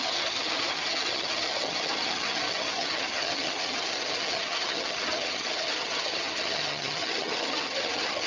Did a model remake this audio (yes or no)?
yes